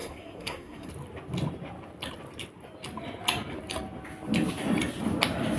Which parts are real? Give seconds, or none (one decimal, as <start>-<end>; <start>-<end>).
0.9-5.6